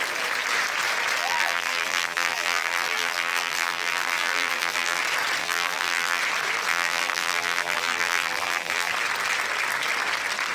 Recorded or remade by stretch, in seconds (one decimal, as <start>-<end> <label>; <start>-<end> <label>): 0.0-1.2 recorded; 1.2-5.0 remade; 5.0-5.4 recorded; 5.4-6.2 remade; 6.2-6.7 recorded; 6.7-8.9 remade; 8.9-10.5 recorded